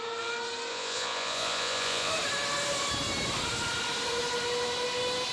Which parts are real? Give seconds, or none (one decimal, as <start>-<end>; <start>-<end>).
0.0-0.7; 2.1-5.3